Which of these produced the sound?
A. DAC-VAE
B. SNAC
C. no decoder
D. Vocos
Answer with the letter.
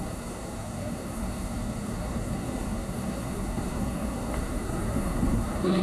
B